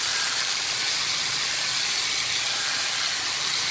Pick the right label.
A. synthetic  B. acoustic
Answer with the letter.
B